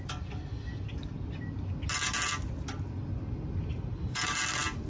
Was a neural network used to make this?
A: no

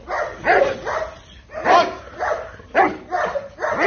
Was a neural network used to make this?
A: no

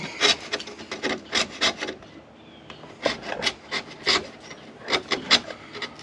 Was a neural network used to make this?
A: no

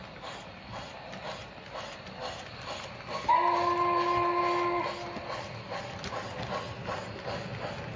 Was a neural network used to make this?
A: no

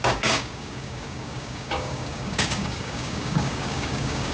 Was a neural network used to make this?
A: yes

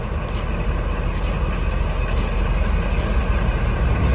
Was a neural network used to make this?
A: no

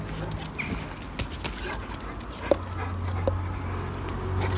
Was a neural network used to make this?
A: no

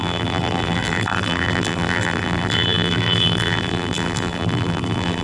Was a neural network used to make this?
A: yes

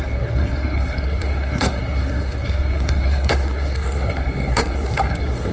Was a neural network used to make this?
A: yes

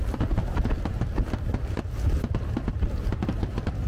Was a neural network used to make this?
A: no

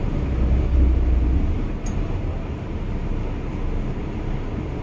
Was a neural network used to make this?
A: no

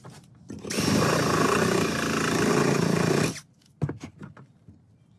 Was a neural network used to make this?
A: no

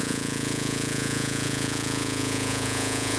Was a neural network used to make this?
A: yes